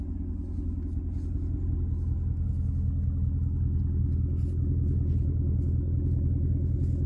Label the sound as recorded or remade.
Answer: recorded